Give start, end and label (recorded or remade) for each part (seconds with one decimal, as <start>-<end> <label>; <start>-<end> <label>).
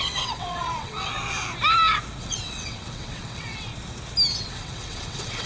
0.0-1.1 remade; 1.1-2.2 recorded; 2.2-3.7 remade; 3.7-4.3 recorded; 4.3-5.5 remade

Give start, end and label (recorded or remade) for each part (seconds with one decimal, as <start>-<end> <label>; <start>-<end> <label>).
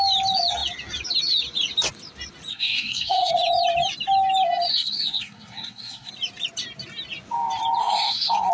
0.0-2.5 recorded; 2.5-3.3 remade; 3.3-4.7 recorded; 4.7-6.1 remade; 6.1-7.8 recorded; 7.8-8.5 remade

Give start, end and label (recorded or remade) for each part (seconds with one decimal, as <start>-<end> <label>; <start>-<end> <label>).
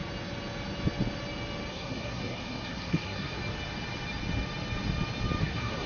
0.0-1.7 recorded; 1.7-3.4 remade; 3.4-5.4 recorded; 5.4-5.9 remade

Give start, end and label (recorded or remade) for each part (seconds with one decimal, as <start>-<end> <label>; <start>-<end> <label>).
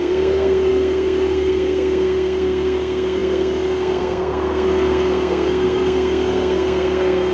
0.0-7.3 remade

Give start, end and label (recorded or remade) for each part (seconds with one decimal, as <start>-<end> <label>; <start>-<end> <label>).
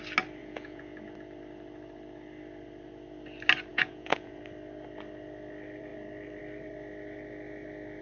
0.0-0.4 recorded; 0.4-1.0 remade; 1.0-3.7 recorded; 3.7-4.4 remade; 4.4-8.0 recorded